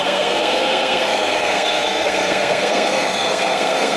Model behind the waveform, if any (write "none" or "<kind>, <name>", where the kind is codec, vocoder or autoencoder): codec, SNAC